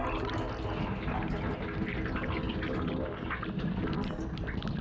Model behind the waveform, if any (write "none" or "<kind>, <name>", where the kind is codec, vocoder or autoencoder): none